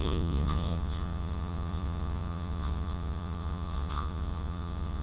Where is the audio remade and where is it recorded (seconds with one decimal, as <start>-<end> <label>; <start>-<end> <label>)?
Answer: 0.0-5.0 remade